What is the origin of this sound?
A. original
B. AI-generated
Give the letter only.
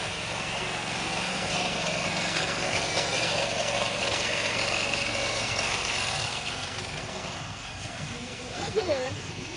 B